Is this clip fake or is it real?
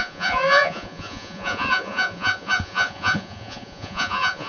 fake